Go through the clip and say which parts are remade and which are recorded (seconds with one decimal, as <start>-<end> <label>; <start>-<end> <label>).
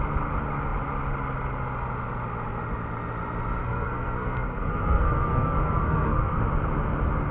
0.0-3.6 recorded; 3.6-6.4 remade; 6.4-7.3 recorded